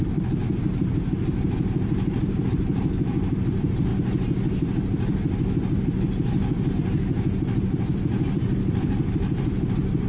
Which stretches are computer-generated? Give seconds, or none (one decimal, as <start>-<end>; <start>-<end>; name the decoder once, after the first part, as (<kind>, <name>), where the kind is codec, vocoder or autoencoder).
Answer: 0.0-0.4 (vocoder, BigVGAN v2); 2.5-3.9; 6.7-10.1